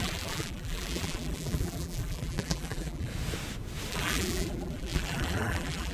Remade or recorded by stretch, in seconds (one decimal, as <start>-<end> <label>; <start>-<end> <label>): 0.0-3.1 remade; 3.1-3.9 recorded; 3.9-5.9 remade